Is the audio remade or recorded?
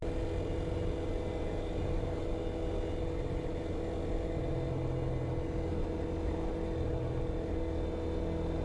recorded